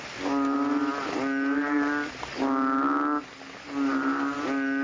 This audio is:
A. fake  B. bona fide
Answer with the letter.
B